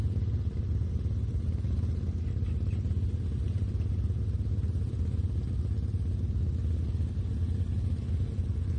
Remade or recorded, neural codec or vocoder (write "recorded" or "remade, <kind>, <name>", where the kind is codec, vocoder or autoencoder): recorded